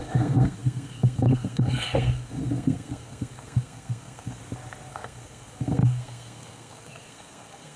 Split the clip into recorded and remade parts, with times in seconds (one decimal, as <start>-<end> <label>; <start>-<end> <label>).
0.0-4.4 remade; 4.4-4.9 recorded; 4.9-7.8 remade